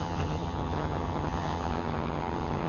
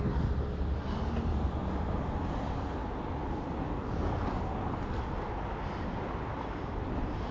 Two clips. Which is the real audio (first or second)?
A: second